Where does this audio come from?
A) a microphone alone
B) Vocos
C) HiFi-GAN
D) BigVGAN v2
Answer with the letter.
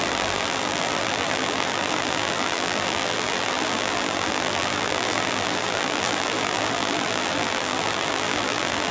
D